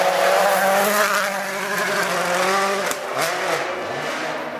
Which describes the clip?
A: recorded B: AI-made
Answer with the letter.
A